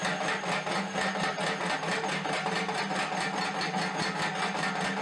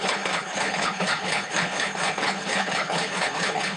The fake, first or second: second